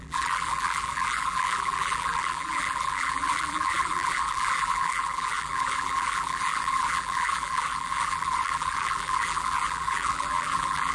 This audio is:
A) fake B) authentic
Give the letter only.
A